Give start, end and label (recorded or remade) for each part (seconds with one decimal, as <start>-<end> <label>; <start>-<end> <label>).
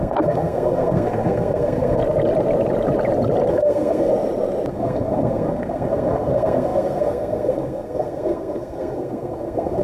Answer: 0.0-2.0 remade; 2.0-3.5 recorded; 3.5-4.1 remade; 4.1-4.7 recorded; 4.7-9.8 remade